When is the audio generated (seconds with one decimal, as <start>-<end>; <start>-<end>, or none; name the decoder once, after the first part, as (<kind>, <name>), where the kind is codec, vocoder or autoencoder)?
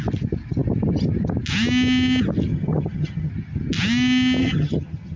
2.5-3.3 (vocoder, HiFi-GAN); 4.4-5.2